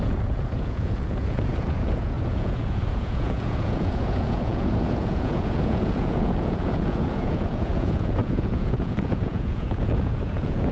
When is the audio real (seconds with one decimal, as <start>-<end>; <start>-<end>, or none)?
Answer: none